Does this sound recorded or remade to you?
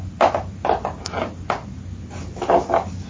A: recorded